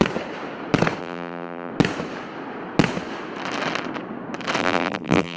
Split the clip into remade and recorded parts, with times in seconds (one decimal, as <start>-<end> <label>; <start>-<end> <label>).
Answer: 0.0-1.0 recorded; 1.0-1.7 remade; 1.7-4.6 recorded; 4.6-5.4 remade

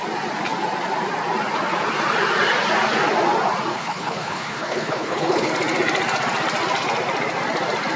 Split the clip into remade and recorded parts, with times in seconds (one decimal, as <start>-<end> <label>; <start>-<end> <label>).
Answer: 0.0-3.7 recorded; 3.7-5.5 remade; 5.5-8.0 recorded

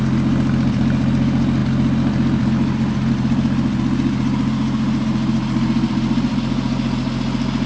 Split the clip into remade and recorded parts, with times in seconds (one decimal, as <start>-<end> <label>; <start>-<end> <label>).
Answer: 0.0-7.7 recorded